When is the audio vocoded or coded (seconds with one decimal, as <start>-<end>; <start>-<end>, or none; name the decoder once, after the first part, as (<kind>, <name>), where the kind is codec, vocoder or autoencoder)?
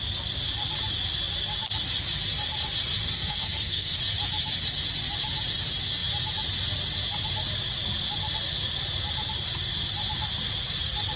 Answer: 3.0-4.0 (codec, SNAC)